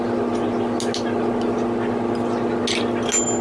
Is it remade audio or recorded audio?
recorded